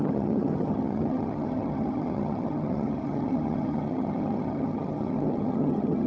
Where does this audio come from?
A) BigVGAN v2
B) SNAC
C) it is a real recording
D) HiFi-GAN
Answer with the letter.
D